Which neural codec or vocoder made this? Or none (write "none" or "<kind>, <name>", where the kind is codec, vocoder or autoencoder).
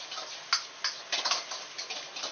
none